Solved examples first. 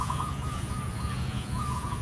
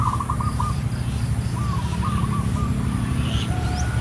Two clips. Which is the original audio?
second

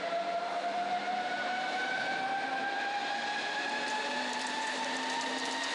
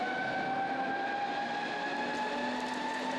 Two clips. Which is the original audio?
second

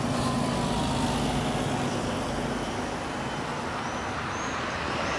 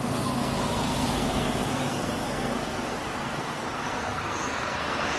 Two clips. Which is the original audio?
first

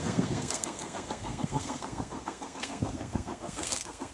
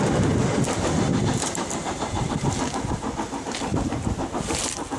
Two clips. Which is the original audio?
second